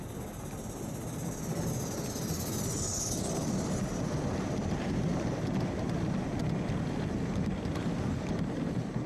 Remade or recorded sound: recorded